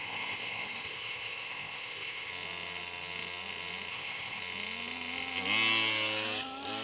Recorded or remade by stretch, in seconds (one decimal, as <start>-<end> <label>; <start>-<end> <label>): 0.0-2.3 remade; 2.3-3.9 recorded; 3.9-4.4 remade; 4.4-6.8 recorded

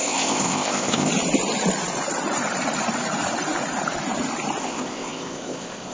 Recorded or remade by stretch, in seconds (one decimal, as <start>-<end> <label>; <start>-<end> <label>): 0.0-1.1 remade; 1.1-4.6 recorded; 4.6-5.9 remade

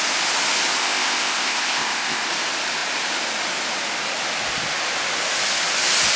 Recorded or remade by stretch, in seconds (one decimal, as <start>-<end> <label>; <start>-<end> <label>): 0.0-0.8 recorded; 0.8-2.3 remade; 2.3-6.2 recorded